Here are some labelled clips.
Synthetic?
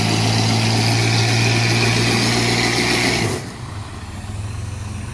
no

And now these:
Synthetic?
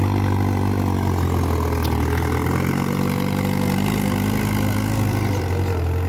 no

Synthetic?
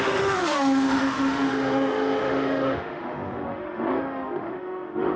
yes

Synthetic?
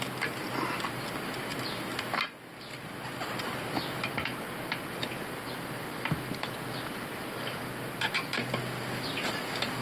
no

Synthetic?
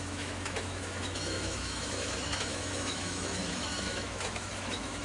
yes